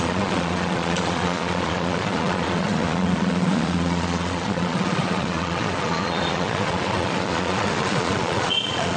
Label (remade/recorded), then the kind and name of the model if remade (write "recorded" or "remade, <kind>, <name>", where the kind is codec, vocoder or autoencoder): remade, vocoder, Vocos